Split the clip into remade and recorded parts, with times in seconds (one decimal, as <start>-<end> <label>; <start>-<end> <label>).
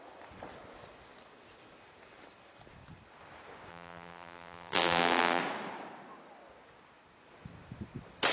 0.0-3.7 recorded; 3.7-5.4 remade; 5.4-8.3 recorded